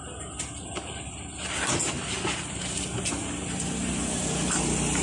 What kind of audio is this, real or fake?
real